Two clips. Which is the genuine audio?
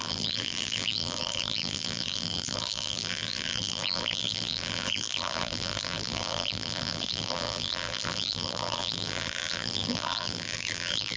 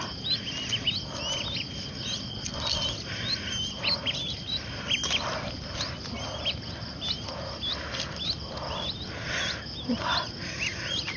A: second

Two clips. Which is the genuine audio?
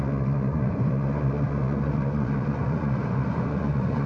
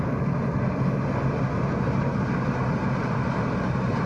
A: second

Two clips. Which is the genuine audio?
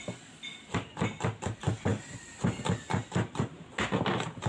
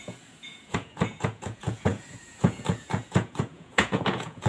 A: first